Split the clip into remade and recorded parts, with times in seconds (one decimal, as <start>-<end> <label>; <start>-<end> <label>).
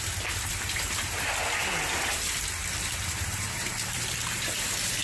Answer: 0.0-1.6 recorded; 1.6-4.6 remade; 4.6-5.0 recorded